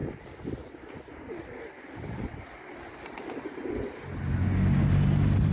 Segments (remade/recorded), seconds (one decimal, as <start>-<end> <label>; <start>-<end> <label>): 0.0-5.5 recorded